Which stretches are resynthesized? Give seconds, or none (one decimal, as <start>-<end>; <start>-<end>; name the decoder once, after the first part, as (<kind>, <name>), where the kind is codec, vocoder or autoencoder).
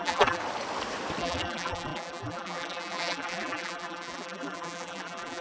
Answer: 0.0-0.4 (vocoder, BigVGAN v2); 1.2-5.4